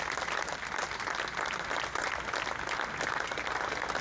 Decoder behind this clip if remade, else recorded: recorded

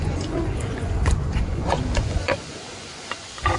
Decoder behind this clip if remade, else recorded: remade, vocoder, Vocos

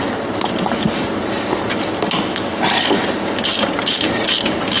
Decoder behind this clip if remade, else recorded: recorded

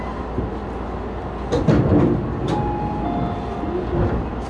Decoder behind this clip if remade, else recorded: recorded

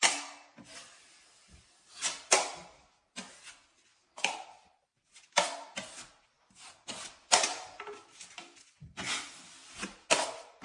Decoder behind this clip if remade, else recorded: recorded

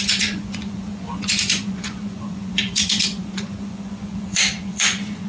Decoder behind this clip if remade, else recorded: remade, vocoder, Vocos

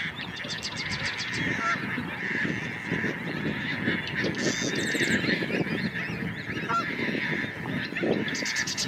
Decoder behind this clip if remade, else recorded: recorded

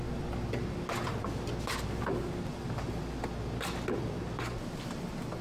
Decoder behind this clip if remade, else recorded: recorded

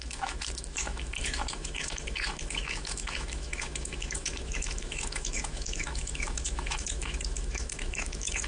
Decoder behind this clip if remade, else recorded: remade, autoencoder, DAC-VAE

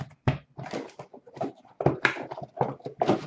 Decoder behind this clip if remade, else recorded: remade, vocoder, BigVGAN v2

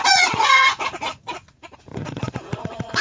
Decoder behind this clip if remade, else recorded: remade, vocoder, Vocos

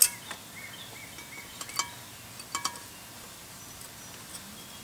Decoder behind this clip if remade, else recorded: recorded